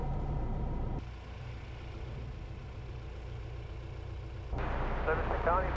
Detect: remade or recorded recorded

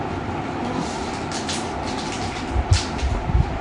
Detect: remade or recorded recorded